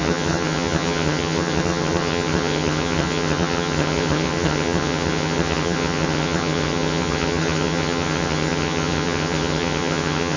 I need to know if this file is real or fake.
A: fake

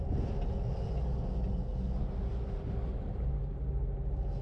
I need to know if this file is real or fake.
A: real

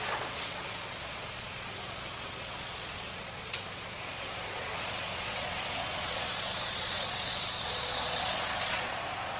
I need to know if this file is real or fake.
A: fake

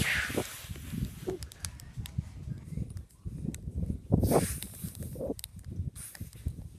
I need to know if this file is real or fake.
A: real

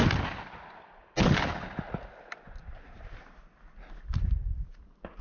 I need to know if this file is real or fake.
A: real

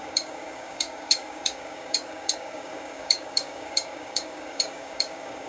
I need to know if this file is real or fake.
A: fake